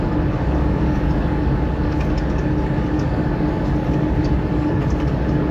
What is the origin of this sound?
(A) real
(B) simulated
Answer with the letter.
B